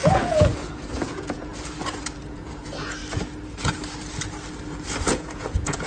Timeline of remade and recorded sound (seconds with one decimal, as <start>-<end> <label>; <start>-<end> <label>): 0.0-1.5 remade; 1.5-2.2 recorded; 2.2-3.0 remade; 3.0-5.0 recorded; 5.0-5.9 remade